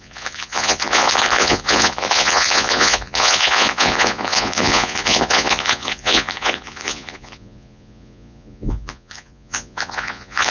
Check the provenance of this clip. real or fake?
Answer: fake